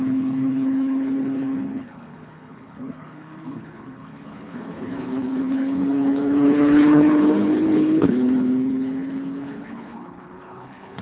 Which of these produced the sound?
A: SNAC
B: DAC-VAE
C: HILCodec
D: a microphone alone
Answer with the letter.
C